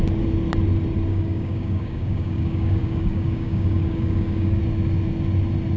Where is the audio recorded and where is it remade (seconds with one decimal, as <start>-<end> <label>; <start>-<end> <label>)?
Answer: 0.0-1.1 recorded; 1.1-4.6 remade; 4.6-5.8 recorded